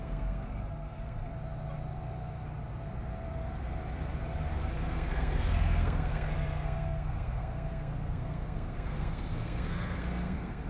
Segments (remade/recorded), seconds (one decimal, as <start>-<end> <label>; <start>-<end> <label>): 0.0-1.3 remade; 1.3-4.6 recorded; 4.6-10.7 remade